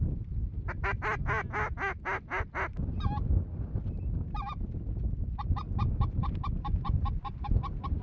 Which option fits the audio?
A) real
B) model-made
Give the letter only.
A